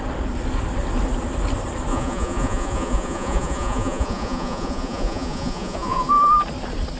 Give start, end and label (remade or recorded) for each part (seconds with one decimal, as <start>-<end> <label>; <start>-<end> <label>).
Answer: 0.0-1.9 recorded; 1.9-6.1 remade; 6.1-7.0 recorded